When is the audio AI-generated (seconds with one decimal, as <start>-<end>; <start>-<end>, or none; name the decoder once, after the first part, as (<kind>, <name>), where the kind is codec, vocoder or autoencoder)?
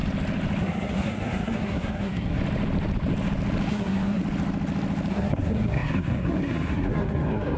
0.6-2.4 (codec, SNAC); 3.7-4.2; 5.1-7.6